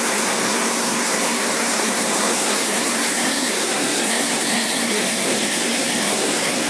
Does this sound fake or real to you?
fake